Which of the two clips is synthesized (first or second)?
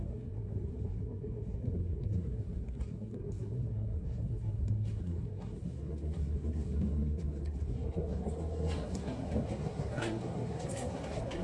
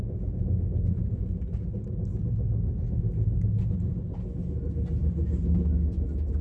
first